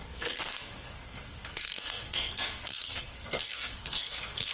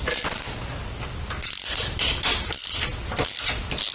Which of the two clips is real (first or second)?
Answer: second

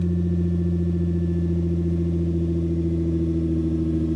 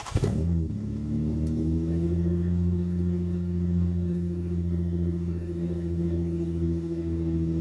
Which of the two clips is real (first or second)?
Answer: first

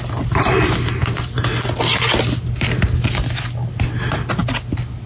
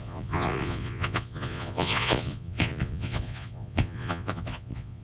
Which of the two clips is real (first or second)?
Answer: first